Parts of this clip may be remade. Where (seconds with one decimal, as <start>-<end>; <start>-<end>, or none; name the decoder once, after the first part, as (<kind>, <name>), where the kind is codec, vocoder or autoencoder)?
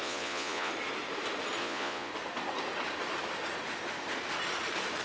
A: 0.0-0.7 (vocoder, Vocos); 1.6-2.1